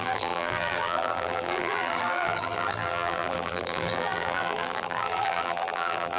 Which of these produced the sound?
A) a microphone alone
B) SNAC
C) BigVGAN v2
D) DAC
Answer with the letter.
C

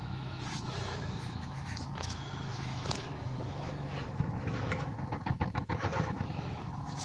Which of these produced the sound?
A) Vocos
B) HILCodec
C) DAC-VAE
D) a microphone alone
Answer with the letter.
C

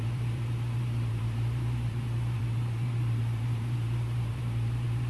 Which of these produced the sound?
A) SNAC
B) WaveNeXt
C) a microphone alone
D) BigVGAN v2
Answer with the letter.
D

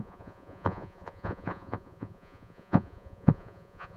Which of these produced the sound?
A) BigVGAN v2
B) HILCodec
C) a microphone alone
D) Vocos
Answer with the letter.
D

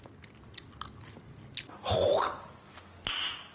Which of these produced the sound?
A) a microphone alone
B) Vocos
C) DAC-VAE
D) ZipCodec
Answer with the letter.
A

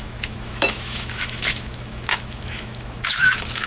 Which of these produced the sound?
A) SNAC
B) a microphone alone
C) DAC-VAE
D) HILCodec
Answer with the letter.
C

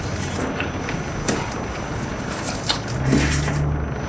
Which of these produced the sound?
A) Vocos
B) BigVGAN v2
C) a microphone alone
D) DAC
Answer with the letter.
C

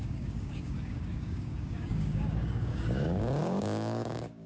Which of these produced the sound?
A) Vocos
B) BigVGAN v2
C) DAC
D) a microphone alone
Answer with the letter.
C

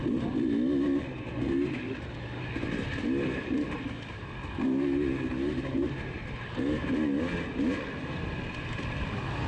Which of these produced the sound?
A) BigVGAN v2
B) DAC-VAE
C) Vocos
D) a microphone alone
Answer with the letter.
D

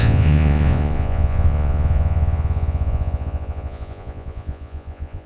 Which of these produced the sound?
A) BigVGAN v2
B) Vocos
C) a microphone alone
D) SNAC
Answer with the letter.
B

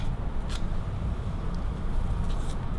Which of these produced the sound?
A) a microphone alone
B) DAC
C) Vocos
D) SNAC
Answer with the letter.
A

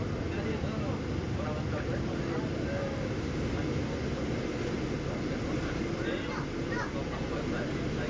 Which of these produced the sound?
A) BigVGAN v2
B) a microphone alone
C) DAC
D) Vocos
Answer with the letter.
B